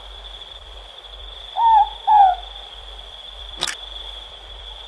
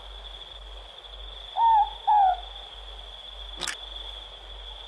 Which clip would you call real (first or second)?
second